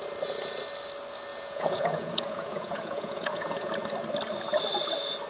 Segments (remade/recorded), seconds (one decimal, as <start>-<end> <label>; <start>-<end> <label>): 0.0-1.3 recorded; 1.3-3.7 remade; 3.7-5.3 recorded